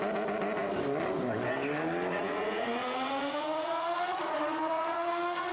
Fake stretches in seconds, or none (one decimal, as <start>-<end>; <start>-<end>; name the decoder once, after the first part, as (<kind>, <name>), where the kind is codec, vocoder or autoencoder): 2.1-5.5 (vocoder, Vocos)